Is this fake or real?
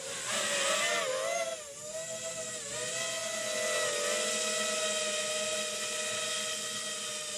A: real